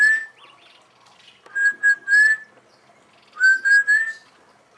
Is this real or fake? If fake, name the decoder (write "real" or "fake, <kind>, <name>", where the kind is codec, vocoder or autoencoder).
real